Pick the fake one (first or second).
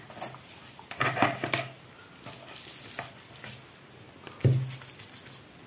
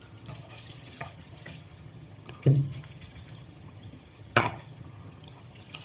second